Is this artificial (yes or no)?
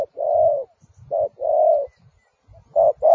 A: no